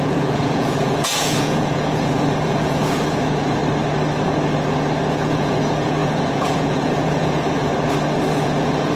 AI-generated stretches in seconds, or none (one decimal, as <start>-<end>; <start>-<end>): 0.0-3.6; 5.1-7.7; 8.3-9.0